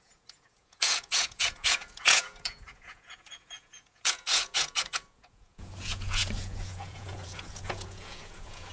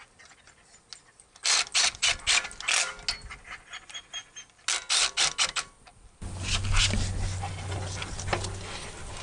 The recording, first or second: second